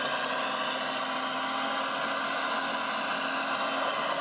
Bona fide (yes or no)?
yes